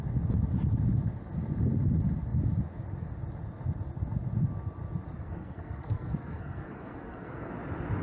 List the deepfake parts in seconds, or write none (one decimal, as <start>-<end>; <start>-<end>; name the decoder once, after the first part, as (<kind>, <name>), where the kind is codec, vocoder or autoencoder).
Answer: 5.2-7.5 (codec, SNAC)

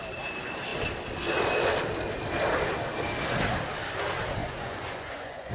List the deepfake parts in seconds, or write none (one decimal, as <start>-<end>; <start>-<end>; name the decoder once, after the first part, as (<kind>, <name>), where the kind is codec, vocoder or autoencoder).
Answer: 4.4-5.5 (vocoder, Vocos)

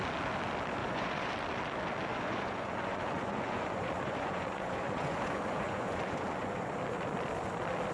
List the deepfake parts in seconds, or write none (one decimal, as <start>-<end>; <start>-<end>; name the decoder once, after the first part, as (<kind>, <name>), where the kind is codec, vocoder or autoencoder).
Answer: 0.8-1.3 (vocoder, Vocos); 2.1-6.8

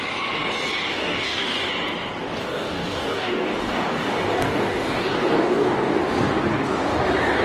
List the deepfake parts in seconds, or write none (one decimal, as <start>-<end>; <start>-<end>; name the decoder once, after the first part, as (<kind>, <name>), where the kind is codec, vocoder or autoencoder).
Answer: 0.9-1.7 (codec, DAC); 2.4-6.0; 6.5-7.0

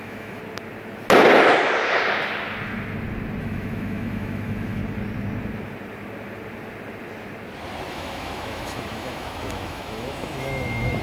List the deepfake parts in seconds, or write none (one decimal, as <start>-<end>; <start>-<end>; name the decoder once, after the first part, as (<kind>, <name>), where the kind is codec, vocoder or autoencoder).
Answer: 0.0-0.4 (autoencoder, DAC-VAE); 3.4-4.8; 7.9-11.0